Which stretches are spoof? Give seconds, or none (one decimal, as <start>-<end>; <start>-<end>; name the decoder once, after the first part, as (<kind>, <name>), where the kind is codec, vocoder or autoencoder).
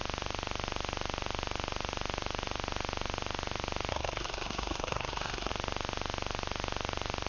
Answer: 3.9-5.5 (codec, SNAC)